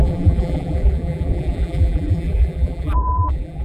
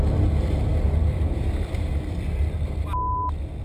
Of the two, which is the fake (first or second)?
first